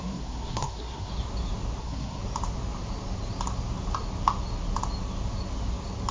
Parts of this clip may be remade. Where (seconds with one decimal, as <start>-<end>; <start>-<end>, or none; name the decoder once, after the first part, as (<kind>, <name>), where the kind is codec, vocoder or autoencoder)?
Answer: 0.0-1.1 (codec, SNAC); 1.8-2.2